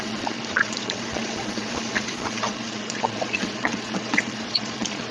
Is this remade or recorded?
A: remade